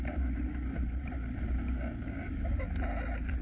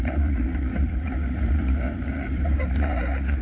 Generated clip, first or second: second